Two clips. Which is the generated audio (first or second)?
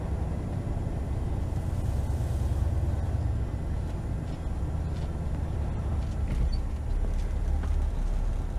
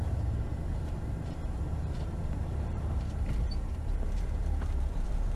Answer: second